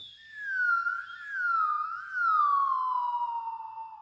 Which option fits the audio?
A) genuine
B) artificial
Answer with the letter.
A